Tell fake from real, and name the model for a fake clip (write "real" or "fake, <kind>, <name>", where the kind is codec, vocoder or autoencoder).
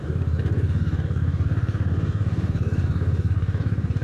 fake, codec, DAC